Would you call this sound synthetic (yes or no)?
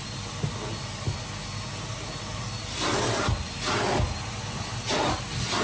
no